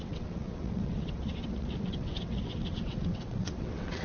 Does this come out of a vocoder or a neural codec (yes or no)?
yes